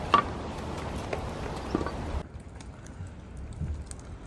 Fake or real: real